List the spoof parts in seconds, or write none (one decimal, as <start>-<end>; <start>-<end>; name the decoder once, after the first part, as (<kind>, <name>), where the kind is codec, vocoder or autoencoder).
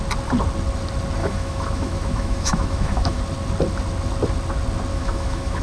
1.2-3.2 (autoencoder, DAC-VAE); 4.9-5.6